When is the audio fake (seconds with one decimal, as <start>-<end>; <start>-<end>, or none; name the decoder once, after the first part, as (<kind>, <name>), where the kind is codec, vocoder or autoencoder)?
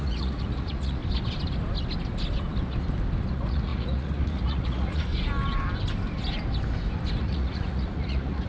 0.0-1.0 (vocoder, Vocos); 3.3-5.1; 7.2-8.5